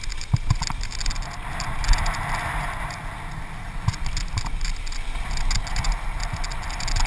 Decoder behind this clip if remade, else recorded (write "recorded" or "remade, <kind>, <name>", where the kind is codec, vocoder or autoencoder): recorded